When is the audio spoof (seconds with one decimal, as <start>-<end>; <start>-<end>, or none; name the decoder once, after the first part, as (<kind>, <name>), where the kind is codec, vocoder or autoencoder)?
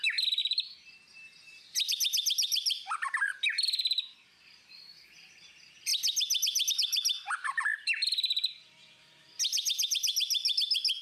0.0-0.4 (vocoder, BigVGAN v2); 1.9-5.9; 6.7-11.0